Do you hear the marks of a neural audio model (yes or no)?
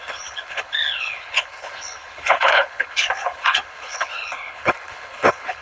yes